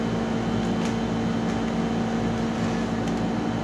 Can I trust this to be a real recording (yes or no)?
yes